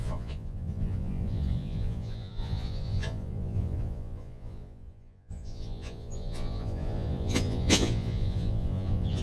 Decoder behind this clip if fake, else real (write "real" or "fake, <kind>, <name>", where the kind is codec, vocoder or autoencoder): fake, vocoder, Vocos